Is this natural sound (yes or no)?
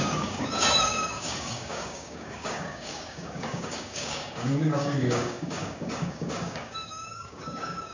no